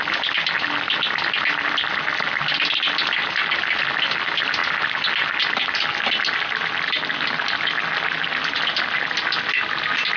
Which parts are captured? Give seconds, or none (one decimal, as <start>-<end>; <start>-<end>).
0.0-10.2